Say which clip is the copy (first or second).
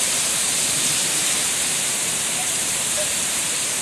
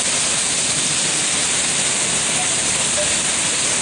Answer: first